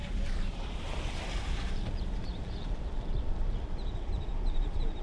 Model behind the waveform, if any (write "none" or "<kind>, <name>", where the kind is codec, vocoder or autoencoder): vocoder, BigVGAN v2